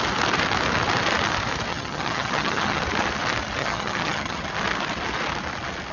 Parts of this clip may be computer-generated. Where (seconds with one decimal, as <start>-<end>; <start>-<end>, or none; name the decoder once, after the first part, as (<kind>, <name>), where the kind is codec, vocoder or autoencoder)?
1.7-2.8 (vocoder, HiFi-GAN); 3.6-4.5